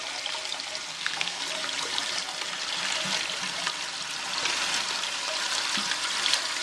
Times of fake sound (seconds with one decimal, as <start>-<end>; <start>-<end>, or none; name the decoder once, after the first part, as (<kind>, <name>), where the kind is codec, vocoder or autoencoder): 0.9-1.4 (codec, SNAC)